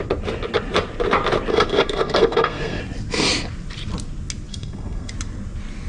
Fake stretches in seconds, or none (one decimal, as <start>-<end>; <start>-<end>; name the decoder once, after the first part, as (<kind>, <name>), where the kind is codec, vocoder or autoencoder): 1.5-2.8 (codec, SNAC); 4.5-5.1